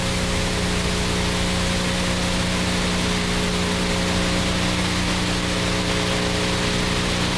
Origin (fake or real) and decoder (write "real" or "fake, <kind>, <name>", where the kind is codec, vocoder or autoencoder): real